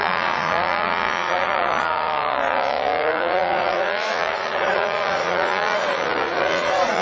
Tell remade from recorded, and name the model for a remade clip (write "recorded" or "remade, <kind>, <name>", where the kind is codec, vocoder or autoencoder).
remade, vocoder, Vocos